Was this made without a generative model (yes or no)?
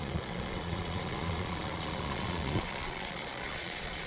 no